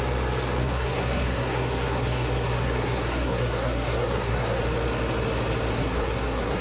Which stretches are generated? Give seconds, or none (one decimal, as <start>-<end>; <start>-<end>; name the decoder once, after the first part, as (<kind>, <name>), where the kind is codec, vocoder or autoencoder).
0.6-4.6 (codec, SNAC); 5.7-6.6